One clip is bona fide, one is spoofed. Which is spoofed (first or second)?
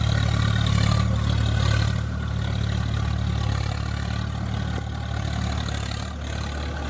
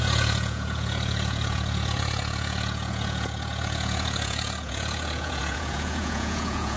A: second